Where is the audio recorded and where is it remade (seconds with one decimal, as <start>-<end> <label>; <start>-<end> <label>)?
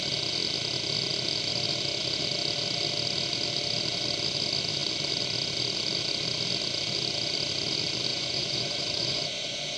0.0-8.1 recorded; 8.1-9.8 remade